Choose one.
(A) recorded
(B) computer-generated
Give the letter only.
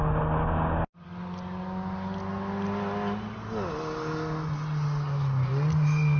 A